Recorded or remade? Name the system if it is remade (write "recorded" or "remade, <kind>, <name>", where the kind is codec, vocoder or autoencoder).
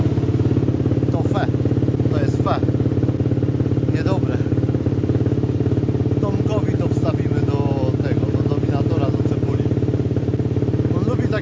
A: recorded